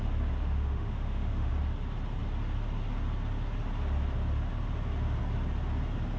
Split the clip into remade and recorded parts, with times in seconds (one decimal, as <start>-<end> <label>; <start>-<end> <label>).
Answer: 0.0-0.4 recorded; 0.4-1.5 remade; 1.5-6.2 recorded